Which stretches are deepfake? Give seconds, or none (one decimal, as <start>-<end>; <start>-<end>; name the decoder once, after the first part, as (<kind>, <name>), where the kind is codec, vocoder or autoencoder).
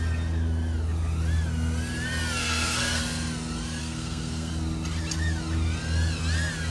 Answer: 2.4-3.0 (codec, SNAC); 3.8-4.5